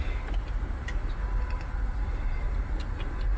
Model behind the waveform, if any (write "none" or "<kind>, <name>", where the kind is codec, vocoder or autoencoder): none